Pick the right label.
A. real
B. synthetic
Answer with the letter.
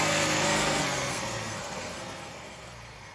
B